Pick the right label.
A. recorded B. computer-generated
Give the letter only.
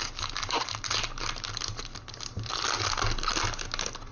A